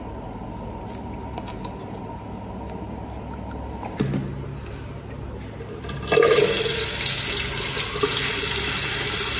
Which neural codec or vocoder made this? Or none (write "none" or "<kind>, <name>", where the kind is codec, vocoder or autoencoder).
none